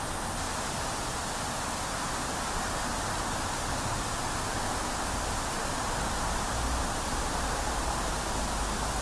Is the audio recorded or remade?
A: recorded